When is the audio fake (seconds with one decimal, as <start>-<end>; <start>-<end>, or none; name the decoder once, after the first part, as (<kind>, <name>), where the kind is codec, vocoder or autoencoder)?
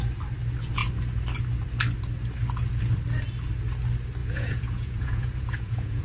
4.2-6.0 (vocoder, Vocos)